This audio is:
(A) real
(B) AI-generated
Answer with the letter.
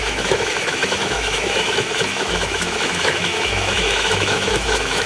B